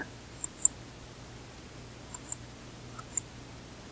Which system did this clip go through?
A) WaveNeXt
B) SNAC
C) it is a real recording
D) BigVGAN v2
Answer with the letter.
C